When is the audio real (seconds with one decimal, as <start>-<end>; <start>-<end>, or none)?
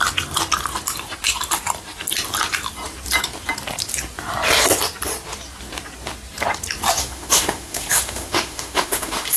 0.0-7.0